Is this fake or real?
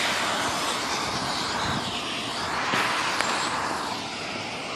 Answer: real